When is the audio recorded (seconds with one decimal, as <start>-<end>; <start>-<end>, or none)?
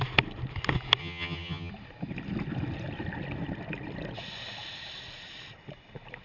0.0-1.0; 1.7-6.2